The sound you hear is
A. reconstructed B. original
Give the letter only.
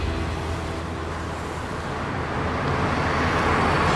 B